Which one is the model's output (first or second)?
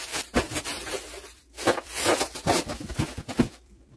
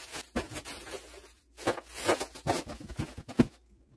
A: first